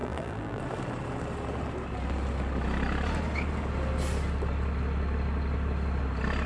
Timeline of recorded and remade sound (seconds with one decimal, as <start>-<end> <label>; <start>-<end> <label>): 0.0-0.6 remade; 0.6-6.5 recorded